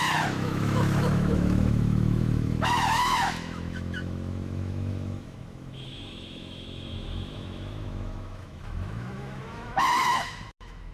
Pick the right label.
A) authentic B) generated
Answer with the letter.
B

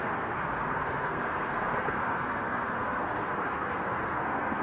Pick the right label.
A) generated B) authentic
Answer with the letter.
A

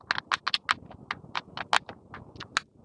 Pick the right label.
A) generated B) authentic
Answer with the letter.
B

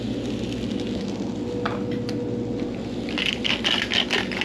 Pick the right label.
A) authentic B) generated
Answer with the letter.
A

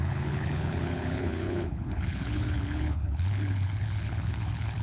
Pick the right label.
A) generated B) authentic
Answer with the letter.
A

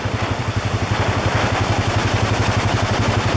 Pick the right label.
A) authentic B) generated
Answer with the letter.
B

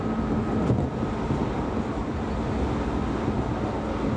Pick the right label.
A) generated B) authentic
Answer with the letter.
B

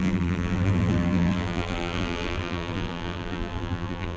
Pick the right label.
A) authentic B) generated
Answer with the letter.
B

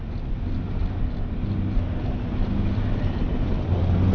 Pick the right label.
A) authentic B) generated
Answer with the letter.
A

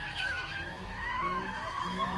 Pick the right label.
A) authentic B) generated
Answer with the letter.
B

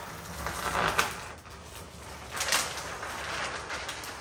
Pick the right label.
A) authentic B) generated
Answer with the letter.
A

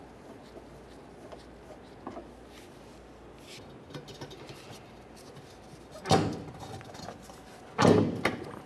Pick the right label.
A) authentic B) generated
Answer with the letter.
A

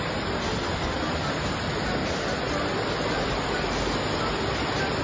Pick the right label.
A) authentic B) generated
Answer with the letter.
A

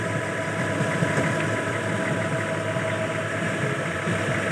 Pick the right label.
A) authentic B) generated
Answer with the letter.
A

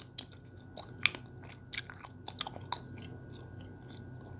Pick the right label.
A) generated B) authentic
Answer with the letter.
B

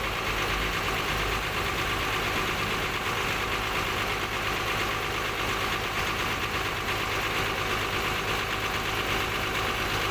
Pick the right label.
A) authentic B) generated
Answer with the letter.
A